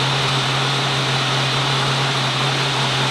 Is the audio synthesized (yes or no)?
no